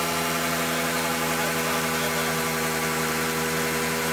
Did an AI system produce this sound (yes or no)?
no